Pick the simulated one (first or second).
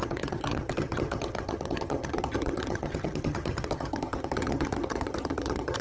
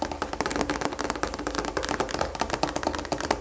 first